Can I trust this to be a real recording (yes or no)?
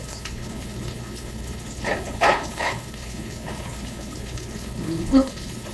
no